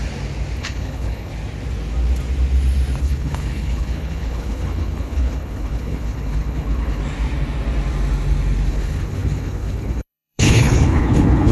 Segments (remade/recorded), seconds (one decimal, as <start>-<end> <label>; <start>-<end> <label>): 0.0-0.6 recorded; 0.6-1.3 remade; 1.3-3.0 recorded; 3.0-7.0 remade; 7.0-8.7 recorded; 8.7-11.5 remade

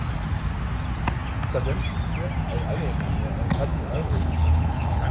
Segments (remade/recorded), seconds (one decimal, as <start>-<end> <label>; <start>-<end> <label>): 0.0-3.7 recorded; 3.7-5.1 remade